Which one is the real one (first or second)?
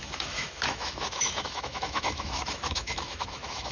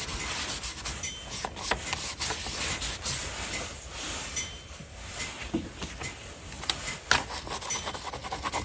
second